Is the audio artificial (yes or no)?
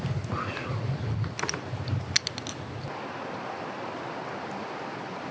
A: no